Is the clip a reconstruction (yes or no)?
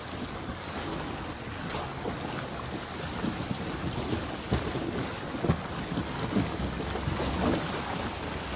no